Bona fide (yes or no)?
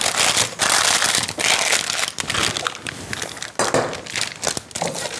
yes